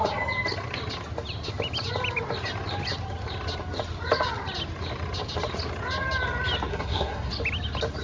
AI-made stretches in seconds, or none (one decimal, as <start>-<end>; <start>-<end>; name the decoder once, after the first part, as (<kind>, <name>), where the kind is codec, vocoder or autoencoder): 6.7-7.3 (codec, SNAC)

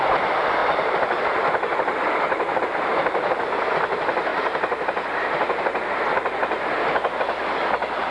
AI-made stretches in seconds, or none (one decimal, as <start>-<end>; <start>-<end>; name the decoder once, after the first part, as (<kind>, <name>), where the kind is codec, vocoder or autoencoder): 0.6-2.6 (vocoder, BigVGAN v2); 4.3-5.8